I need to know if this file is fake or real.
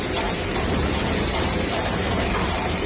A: fake